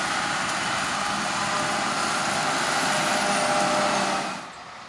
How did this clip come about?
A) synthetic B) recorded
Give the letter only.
B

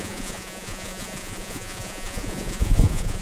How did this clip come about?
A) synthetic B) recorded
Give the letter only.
A